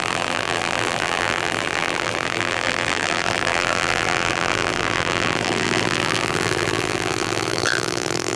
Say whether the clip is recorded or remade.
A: remade